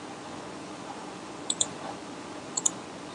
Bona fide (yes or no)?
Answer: no